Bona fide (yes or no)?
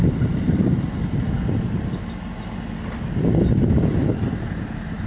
yes